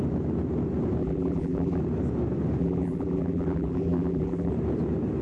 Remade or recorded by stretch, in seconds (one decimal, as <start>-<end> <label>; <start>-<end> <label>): 0.0-1.0 recorded; 1.0-1.8 remade; 1.8-2.6 recorded; 2.6-4.5 remade; 4.5-5.2 recorded